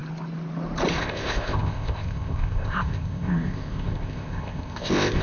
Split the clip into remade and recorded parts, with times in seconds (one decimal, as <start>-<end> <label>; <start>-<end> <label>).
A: 0.0-1.0 recorded; 1.0-5.2 remade